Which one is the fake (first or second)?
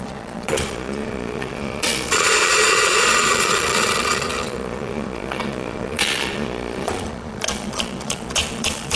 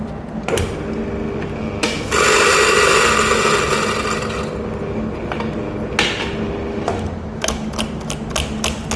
first